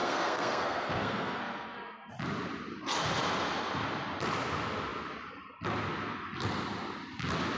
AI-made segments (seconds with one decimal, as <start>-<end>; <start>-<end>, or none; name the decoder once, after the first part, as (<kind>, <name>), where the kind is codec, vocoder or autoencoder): 0.0-2.1 (codec, SNAC)